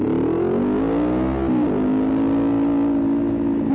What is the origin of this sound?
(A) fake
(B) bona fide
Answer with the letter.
B